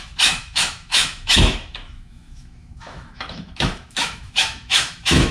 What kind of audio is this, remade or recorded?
remade